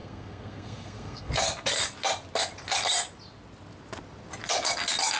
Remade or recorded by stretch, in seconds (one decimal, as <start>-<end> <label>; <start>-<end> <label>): 0.0-1.3 remade; 1.3-5.2 recorded